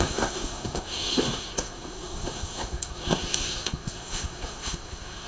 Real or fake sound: fake